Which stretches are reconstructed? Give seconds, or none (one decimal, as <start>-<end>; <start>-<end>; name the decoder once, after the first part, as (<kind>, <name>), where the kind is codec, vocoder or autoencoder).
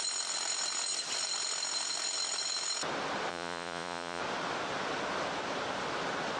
3.3-4.2 (vocoder, Vocos)